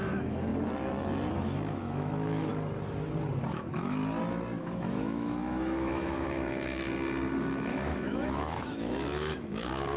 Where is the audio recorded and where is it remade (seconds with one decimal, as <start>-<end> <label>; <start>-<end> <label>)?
0.0-0.5 remade; 0.5-1.3 recorded; 1.3-2.5 remade; 2.5-3.5 recorded; 3.5-4.0 remade; 4.0-4.6 recorded; 4.6-6.9 remade; 6.9-7.4 recorded; 7.4-10.0 remade